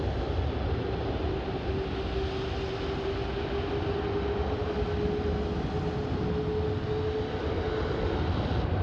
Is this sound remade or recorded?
recorded